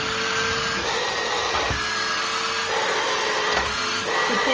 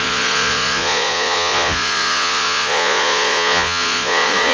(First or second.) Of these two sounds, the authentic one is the first